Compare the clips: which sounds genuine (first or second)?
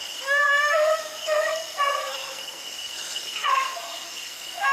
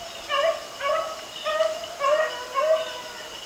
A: second